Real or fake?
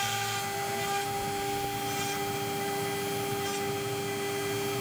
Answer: real